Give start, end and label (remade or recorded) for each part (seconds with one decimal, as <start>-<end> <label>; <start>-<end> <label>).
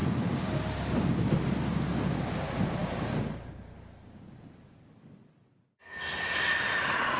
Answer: 0.0-1.0 remade; 1.0-7.2 recorded